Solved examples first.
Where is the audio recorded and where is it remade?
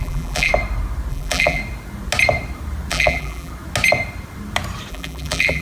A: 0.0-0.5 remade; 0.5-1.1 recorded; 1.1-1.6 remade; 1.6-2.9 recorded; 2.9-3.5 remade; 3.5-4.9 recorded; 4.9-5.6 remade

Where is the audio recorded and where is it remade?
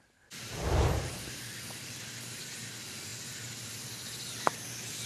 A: 0.0-5.1 recorded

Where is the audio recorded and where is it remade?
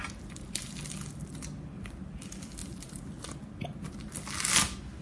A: 0.0-5.0 recorded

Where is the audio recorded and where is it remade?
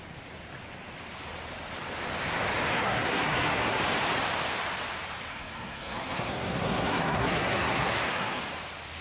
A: 0.0-2.7 recorded; 2.7-3.8 remade; 3.8-5.3 recorded; 5.3-8.4 remade; 8.4-9.0 recorded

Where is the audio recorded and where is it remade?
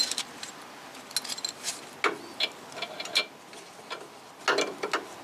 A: 0.0-5.2 recorded